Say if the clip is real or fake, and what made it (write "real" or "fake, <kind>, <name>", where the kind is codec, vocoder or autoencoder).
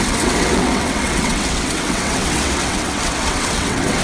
fake, vocoder, WaveNeXt